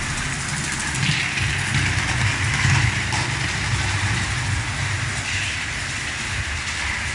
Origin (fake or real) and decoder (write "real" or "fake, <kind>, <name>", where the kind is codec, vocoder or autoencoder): real